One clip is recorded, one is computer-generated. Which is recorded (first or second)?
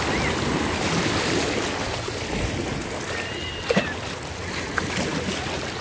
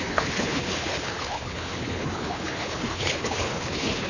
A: first